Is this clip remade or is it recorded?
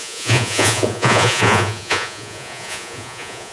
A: remade